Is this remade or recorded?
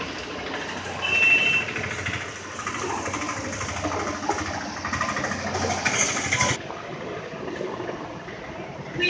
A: recorded